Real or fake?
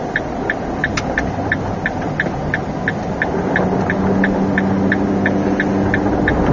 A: real